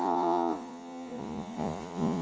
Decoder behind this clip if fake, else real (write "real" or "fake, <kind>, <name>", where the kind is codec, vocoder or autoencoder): fake, vocoder, Vocos